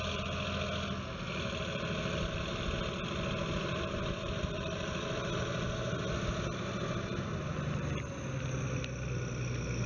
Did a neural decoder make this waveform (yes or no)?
no